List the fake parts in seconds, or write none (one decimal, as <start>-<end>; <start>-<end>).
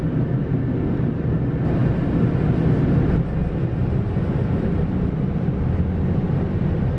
none